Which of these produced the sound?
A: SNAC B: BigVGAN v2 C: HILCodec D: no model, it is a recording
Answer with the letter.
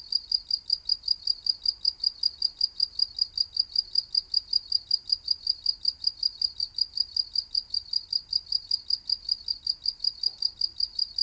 D